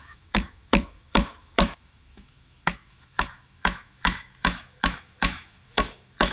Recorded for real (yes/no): no